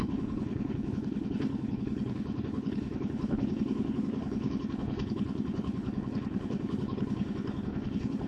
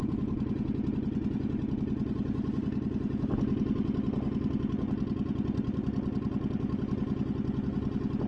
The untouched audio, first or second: second